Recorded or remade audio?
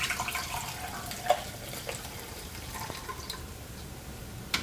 recorded